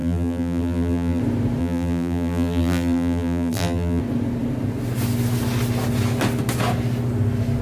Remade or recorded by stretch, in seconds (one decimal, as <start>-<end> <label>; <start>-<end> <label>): 0.0-1.2 remade; 1.2-1.6 recorded; 1.6-4.0 remade; 4.0-7.6 recorded